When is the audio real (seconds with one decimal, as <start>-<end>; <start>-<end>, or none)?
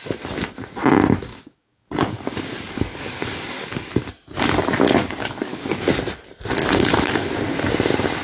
0.0-1.3; 3.9-5.0; 5.9-6.6; 7.3-8.2